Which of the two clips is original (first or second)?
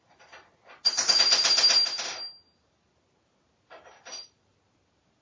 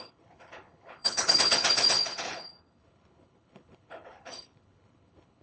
first